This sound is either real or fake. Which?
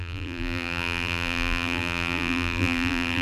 fake